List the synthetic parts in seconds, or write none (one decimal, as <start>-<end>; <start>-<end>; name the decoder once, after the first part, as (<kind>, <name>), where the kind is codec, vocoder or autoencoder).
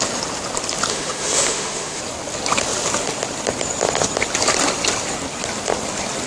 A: 0.9-2.0 (autoencoder, DAC-VAE)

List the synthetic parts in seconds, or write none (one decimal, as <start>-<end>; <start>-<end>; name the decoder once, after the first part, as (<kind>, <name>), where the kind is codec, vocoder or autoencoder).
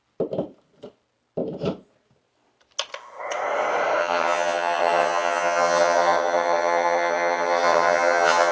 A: 4.0-8.5 (vocoder, HiFi-GAN)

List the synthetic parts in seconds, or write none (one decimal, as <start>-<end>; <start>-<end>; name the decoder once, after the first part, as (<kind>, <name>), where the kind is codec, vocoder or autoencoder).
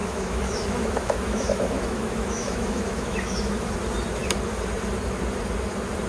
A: 0.0-3.7 (autoencoder, DAC-VAE)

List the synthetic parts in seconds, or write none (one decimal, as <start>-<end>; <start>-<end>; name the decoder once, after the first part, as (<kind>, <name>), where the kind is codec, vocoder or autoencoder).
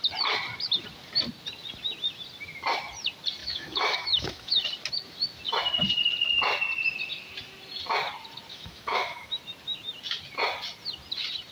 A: 3.4-4.6 (autoencoder, DAC-VAE); 8.5-9.4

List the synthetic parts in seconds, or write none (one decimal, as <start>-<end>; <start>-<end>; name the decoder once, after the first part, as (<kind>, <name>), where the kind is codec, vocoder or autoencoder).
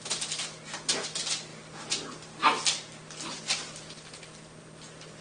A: none